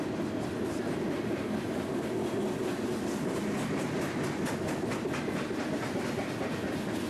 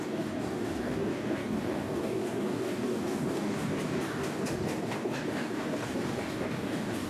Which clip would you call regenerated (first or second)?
second